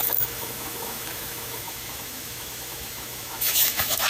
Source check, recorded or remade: remade